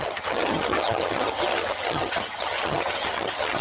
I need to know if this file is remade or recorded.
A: remade